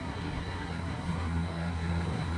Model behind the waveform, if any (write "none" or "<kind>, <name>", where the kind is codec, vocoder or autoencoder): codec, SNAC